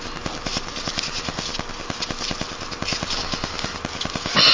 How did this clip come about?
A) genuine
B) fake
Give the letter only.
A